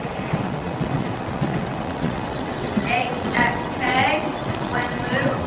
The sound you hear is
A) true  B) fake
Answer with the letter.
B